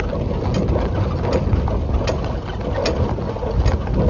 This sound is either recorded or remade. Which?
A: recorded